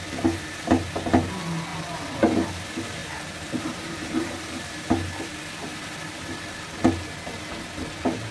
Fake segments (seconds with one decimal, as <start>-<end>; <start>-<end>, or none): 3.0-4.7